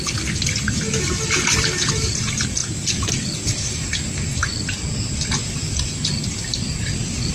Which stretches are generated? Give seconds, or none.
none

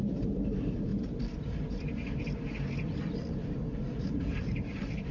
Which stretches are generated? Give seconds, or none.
0.0-0.9; 4.0-5.1

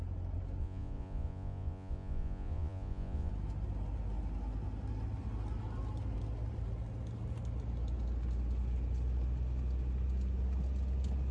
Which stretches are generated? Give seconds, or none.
0.6-3.3